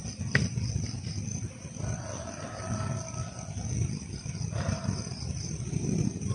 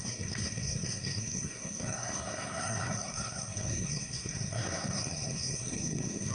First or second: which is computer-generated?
second